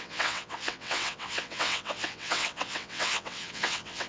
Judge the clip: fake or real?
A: fake